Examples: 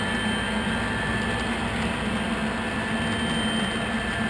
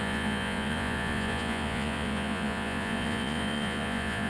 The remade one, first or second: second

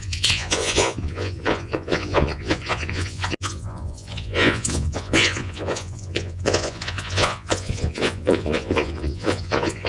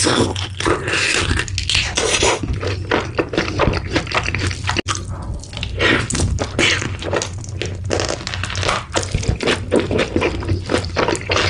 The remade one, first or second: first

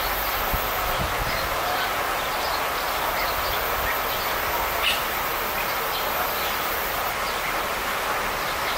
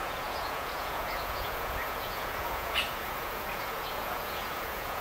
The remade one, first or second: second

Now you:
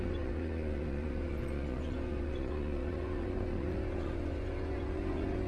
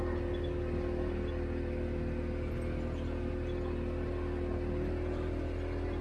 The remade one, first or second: first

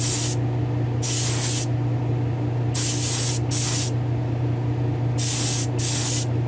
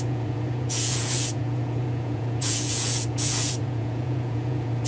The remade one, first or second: second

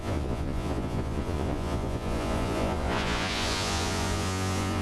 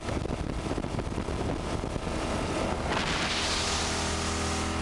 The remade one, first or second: first